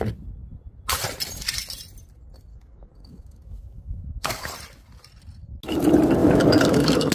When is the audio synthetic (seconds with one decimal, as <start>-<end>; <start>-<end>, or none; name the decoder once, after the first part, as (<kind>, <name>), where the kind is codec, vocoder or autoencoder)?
2.5-4.5 (codec, DAC); 6.2-7.1